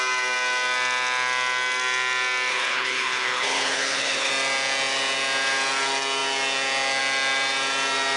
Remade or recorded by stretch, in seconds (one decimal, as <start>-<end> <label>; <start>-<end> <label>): 0.0-2.5 recorded; 2.5-4.3 remade; 4.3-8.2 recorded